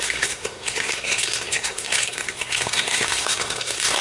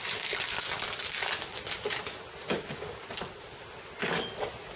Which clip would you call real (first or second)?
second